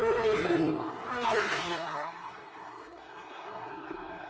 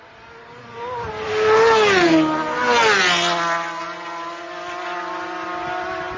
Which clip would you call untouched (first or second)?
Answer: second